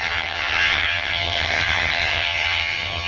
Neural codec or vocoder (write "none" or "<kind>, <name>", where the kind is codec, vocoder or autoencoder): vocoder, HiFi-GAN